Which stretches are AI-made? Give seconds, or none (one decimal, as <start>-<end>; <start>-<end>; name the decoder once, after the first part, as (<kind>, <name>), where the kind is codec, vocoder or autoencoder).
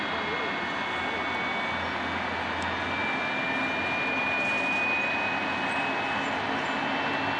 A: none